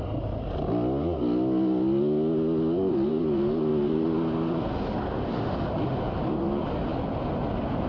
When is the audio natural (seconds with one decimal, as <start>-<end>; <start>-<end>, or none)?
0.0-7.9